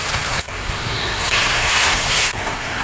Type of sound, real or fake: fake